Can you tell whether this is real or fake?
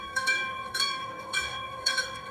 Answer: fake